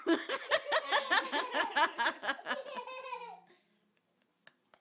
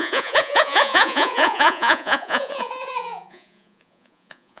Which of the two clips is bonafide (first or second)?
first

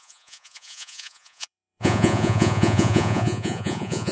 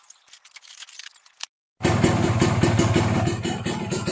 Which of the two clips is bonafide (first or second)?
second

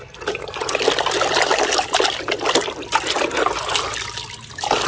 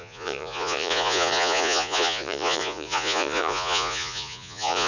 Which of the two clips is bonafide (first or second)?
first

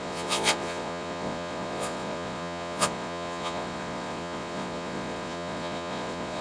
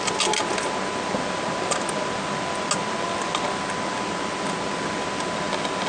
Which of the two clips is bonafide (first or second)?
second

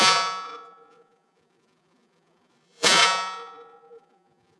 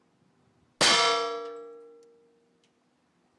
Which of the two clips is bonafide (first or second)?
second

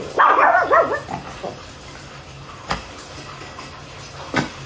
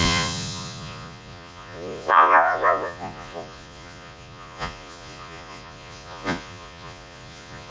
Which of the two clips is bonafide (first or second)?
first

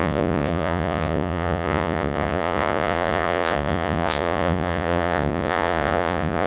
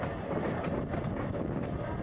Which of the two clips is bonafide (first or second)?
second